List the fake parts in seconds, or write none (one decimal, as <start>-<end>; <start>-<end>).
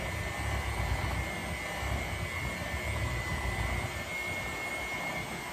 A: none